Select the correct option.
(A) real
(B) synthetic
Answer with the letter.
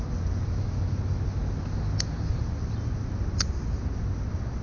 A